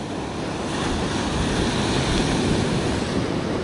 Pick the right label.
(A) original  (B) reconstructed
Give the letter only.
A